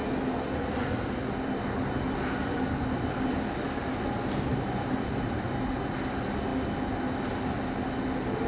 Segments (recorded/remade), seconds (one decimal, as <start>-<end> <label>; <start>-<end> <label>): 0.0-4.5 recorded; 4.5-5.7 remade; 5.7-8.5 recorded

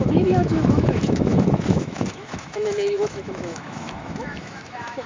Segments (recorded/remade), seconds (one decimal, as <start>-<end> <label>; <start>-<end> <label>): 0.0-5.1 remade